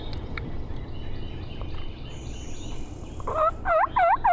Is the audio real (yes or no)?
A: yes